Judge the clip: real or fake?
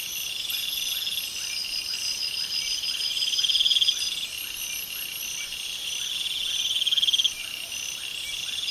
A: real